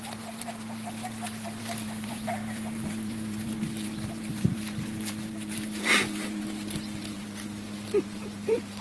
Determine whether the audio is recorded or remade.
remade